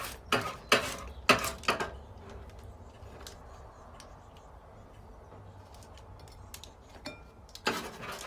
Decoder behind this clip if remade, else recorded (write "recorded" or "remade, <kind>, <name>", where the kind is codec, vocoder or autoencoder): recorded